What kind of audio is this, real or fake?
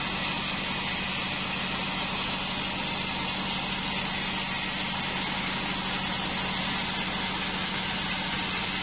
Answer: real